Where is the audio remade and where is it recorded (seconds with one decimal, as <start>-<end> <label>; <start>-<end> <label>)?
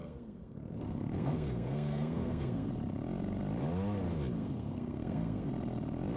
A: 0.0-2.7 remade; 2.7-4.4 recorded; 4.4-5.5 remade; 5.5-6.2 recorded